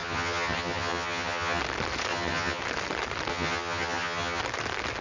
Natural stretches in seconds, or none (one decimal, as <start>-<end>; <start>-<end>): 1.6-2.1; 2.6-3.3; 4.4-5.0